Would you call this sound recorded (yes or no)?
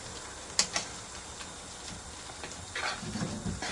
yes